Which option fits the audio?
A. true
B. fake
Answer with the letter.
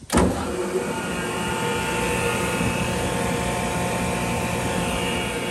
A